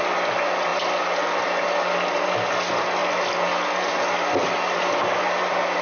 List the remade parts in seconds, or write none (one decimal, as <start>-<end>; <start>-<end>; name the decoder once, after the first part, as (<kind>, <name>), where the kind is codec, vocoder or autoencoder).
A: none